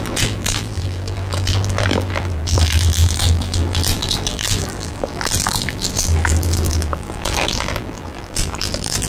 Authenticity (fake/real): fake